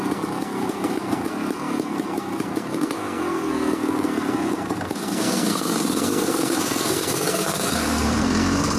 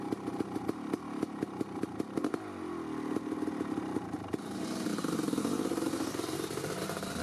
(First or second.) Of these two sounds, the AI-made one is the first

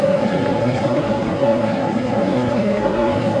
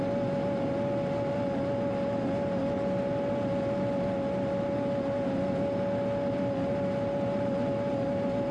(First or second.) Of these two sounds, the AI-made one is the first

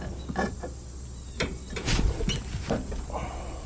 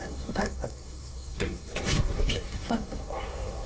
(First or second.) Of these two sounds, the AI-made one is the second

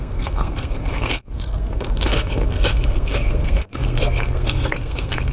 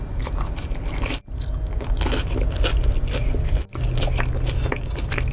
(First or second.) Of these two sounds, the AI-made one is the first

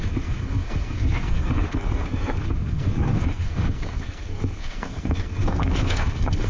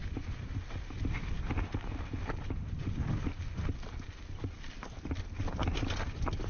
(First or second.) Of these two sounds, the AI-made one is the first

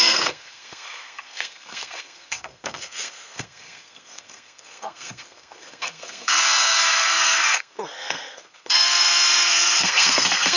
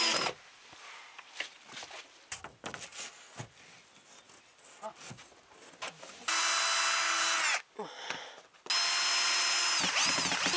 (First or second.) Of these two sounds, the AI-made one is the first